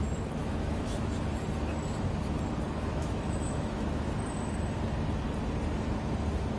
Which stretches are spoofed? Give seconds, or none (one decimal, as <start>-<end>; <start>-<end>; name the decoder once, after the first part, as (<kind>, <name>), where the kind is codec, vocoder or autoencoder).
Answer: 0.4-1.2 (autoencoder, DAC-VAE); 2.9-4.1